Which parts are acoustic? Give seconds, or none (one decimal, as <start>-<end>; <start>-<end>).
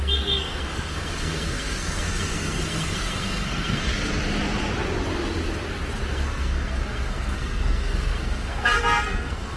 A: 3.9-6.1